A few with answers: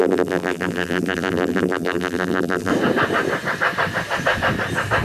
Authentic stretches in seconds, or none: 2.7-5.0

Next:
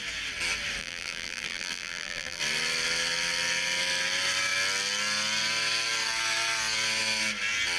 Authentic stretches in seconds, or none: 0.0-0.8; 2.4-7.8

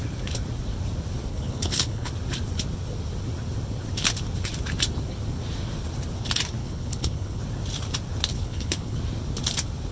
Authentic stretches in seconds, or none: 0.0-1.3; 2.1-6.6; 7.4-8.3; 9.0-9.9

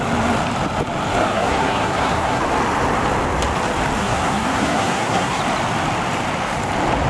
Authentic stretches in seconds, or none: 0.0-1.2; 2.4-4.0; 5.4-7.1

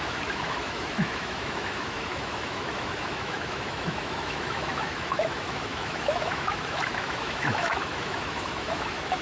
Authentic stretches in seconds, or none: none

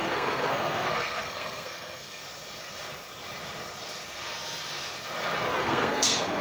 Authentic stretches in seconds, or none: 2.2-5.6